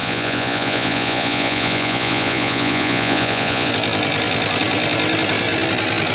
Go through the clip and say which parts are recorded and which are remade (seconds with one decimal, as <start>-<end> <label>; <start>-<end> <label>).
0.0-3.7 remade; 3.7-6.1 recorded